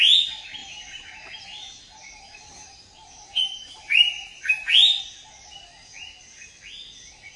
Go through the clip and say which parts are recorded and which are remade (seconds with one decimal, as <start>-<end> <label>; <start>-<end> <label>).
0.0-0.6 recorded; 0.6-5.0 remade; 5.0-7.4 recorded